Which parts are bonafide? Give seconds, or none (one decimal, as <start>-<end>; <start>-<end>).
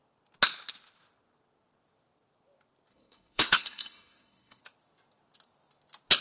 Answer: 0.0-2.9; 4.6-6.2